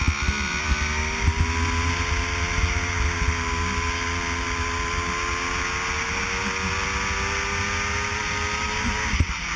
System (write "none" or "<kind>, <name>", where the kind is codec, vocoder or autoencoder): none